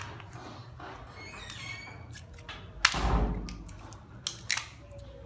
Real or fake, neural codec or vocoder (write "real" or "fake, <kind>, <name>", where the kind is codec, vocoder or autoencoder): real